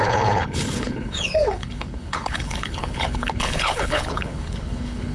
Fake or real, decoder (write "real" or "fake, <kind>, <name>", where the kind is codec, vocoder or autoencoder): fake, codec, HILCodec